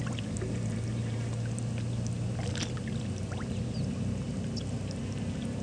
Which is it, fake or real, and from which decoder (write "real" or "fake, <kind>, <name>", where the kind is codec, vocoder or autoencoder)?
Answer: real